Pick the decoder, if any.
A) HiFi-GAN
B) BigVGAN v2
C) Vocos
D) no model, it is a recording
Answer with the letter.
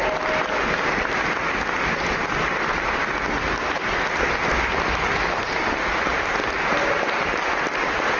D